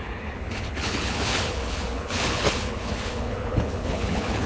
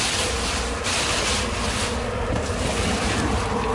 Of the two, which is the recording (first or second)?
second